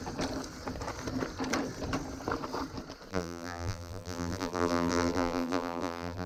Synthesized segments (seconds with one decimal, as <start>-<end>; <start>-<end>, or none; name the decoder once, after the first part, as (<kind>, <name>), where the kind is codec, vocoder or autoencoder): 3.1-6.3 (vocoder, BigVGAN v2)